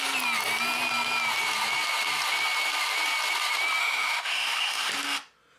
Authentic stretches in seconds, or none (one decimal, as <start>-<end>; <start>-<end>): 0.0-3.8; 4.9-5.6